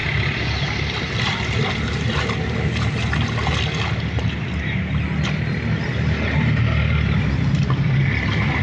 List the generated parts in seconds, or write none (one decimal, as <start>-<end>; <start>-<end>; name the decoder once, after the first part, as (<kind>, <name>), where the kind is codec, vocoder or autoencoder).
0.0-1.0 (vocoder, BigVGAN v2)